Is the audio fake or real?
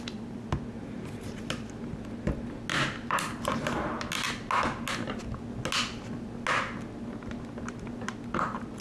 real